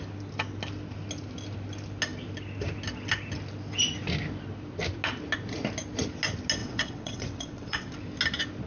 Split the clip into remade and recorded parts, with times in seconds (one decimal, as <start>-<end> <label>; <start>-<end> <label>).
0.0-6.6 recorded; 6.6-7.9 remade; 7.9-8.7 recorded